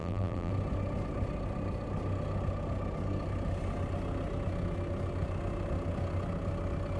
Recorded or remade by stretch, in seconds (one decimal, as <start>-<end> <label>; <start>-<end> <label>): 0.0-0.5 remade; 0.5-7.0 recorded

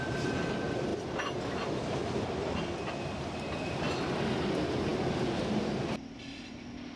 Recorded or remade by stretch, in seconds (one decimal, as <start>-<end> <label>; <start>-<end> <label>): 0.0-7.0 recorded

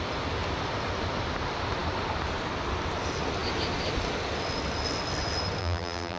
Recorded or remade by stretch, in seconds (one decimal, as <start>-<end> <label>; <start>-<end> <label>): 0.0-5.6 recorded; 5.6-6.2 remade

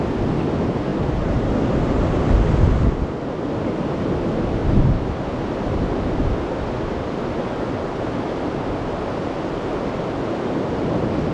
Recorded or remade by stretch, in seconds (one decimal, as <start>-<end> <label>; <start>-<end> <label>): 0.0-11.3 recorded